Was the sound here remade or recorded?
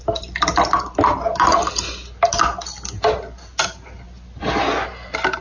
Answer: recorded